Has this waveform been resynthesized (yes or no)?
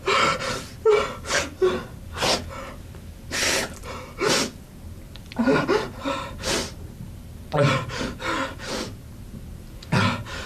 no